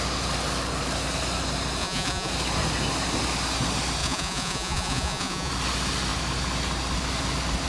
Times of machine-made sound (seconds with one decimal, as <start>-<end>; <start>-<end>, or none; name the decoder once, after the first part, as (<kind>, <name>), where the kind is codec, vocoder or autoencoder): 1.8-2.3 (vocoder, Vocos); 4.0-5.5